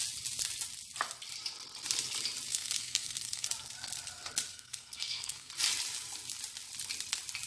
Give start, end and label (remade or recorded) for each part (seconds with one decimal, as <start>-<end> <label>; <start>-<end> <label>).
0.0-2.5 recorded; 2.5-3.5 remade; 3.5-4.5 recorded; 4.5-5.5 remade; 5.5-7.5 recorded